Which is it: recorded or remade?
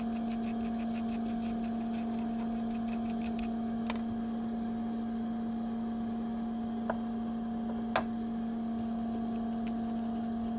recorded